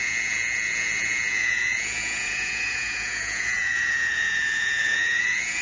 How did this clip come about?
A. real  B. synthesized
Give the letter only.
B